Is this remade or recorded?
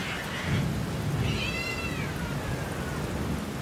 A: recorded